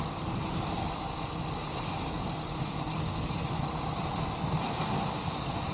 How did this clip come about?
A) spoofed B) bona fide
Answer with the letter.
B